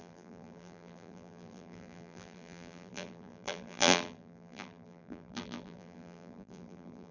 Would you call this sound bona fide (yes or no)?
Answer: no